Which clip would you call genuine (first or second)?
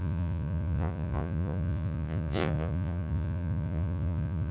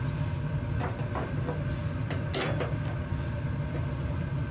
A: second